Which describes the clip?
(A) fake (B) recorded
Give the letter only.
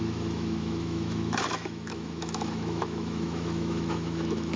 A